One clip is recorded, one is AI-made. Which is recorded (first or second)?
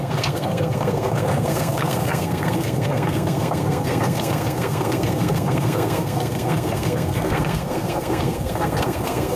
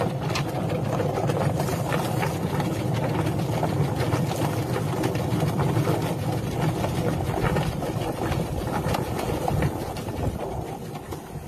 second